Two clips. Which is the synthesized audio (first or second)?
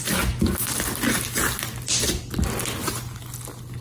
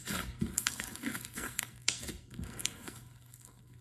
second